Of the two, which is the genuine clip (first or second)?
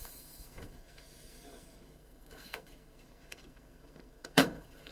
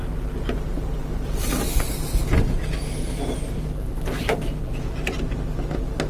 second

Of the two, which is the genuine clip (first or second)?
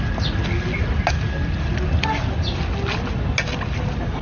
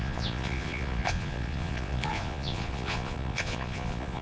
first